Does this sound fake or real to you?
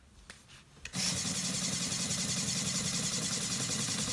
real